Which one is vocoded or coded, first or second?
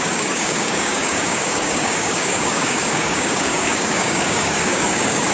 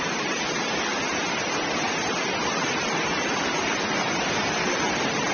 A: first